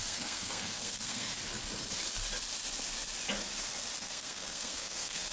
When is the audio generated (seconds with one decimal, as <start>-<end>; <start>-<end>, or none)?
0.0-1.3; 4.0-5.3